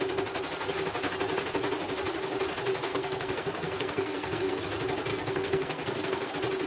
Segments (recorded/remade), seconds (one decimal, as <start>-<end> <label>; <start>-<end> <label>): 0.0-2.9 recorded; 2.9-4.6 remade; 4.6-5.1 recorded; 5.1-6.3 remade; 6.3-6.7 recorded